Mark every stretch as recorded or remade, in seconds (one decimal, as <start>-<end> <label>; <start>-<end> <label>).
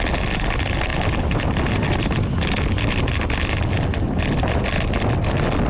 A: 0.0-5.7 recorded